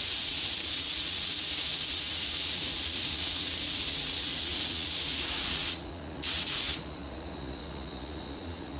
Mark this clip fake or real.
fake